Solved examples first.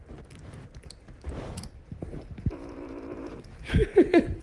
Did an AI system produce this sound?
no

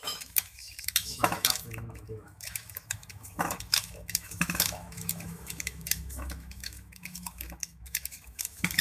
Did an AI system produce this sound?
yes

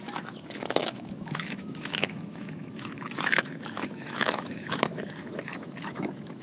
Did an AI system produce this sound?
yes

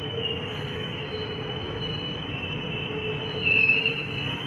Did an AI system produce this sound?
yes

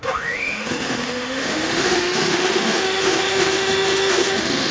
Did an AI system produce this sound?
yes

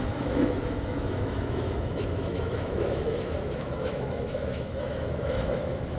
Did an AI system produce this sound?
yes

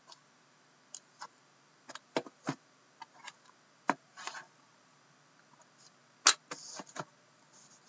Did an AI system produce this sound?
no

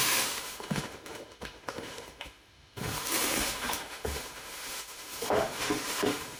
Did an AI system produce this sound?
yes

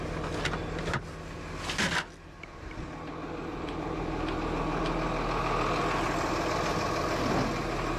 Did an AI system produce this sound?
no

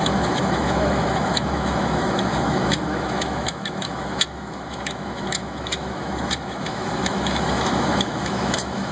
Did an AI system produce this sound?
yes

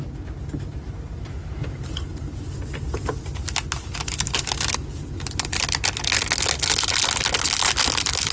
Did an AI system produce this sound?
no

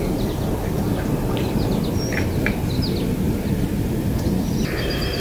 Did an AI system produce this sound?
no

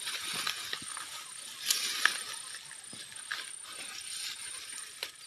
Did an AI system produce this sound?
no